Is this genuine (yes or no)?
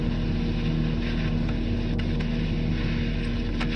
yes